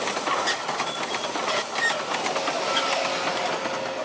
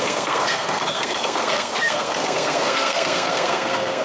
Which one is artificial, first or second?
second